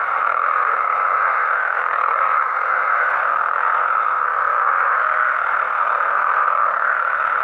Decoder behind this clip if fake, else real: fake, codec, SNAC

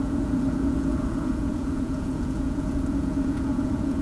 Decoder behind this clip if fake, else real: fake, vocoder, Vocos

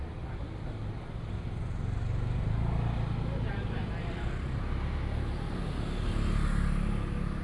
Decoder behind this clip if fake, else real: real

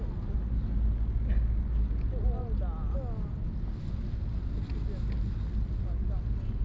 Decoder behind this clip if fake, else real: real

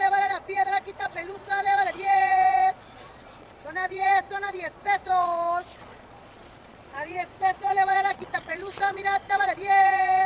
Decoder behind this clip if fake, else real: fake, vocoder, Vocos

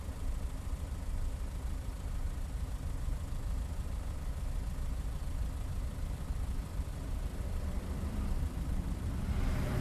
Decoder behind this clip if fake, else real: fake, vocoder, BigVGAN v2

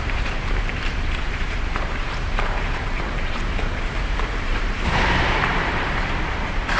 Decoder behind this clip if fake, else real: fake, vocoder, BigVGAN v2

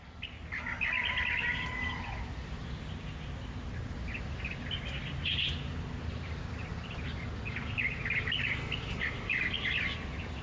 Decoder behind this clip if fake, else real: real